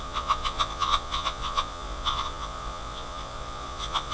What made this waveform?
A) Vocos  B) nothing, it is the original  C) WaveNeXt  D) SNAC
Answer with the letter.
A